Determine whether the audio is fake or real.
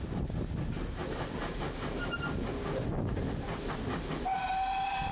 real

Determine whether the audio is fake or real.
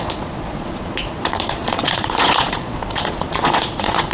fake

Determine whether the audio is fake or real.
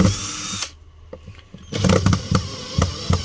real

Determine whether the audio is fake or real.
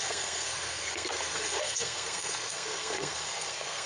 fake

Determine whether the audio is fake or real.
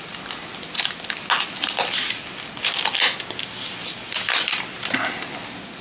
real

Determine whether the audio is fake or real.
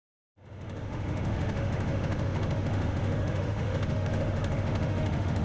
fake